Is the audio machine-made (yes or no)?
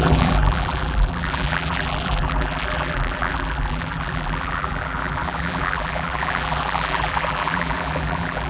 yes